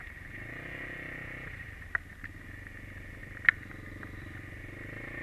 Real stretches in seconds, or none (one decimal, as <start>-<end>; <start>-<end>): 0.0-3.2; 4.6-5.2